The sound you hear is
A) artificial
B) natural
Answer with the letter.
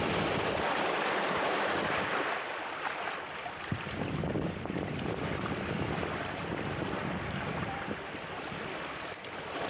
A